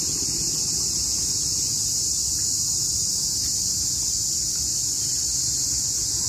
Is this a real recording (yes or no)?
yes